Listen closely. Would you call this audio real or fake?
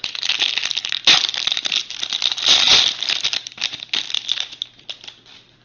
real